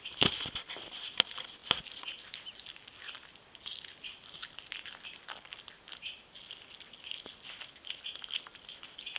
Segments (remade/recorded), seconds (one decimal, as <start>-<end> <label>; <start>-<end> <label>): 0.0-9.2 recorded